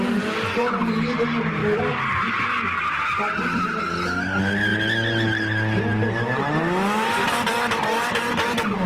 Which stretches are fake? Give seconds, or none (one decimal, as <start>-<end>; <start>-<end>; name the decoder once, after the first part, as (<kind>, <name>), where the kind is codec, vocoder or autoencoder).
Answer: none